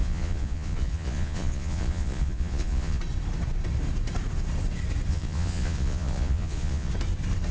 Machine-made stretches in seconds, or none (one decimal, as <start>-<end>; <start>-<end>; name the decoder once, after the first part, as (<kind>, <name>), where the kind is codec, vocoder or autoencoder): 0.0-3.0 (vocoder, Vocos); 5.1-6.9